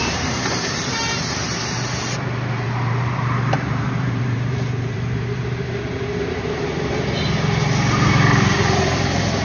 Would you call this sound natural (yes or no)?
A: no